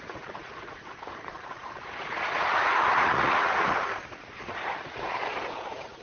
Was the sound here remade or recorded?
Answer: remade